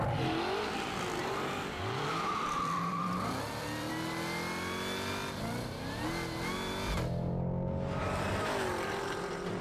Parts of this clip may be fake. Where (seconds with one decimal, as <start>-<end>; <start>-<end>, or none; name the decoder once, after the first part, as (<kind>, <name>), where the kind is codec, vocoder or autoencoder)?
1.2-3.9 (vocoder, BigVGAN v2)